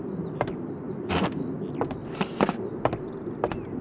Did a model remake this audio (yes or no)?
no